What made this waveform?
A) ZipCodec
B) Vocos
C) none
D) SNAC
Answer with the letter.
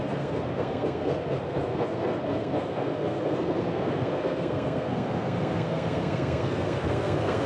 D